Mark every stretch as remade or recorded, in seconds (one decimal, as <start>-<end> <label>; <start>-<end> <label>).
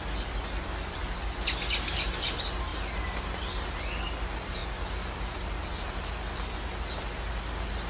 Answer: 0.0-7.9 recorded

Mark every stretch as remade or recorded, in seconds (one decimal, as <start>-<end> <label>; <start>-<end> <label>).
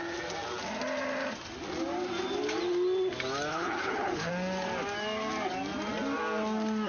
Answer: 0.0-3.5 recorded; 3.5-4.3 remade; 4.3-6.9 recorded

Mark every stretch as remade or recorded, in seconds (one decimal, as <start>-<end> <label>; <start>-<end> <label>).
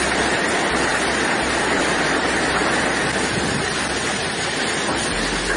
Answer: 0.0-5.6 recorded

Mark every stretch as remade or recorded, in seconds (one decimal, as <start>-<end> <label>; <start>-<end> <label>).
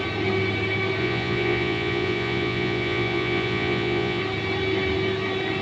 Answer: 0.0-1.0 recorded; 1.0-4.2 remade; 4.2-5.6 recorded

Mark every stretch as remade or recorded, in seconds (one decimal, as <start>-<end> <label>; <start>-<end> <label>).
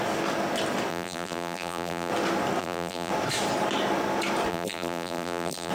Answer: 0.0-0.9 recorded; 0.9-2.1 remade; 2.1-2.6 recorded; 2.6-3.1 remade; 3.1-4.5 recorded; 4.5-5.7 remade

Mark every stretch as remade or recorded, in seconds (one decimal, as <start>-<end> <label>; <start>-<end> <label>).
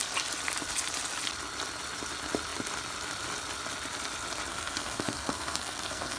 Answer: 0.0-4.5 recorded; 4.5-6.2 remade